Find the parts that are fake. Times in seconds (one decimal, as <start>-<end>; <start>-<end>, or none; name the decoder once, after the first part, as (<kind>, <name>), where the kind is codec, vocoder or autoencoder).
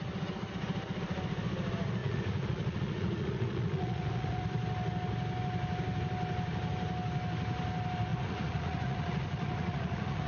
2.0-4.4 (vocoder, Vocos); 8.1-10.3